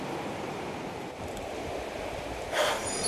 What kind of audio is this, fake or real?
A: fake